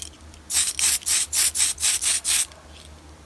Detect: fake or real real